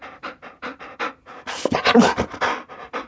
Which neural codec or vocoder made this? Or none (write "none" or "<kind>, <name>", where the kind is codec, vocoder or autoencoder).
vocoder, BigVGAN v2